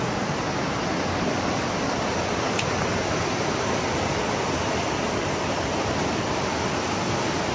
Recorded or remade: recorded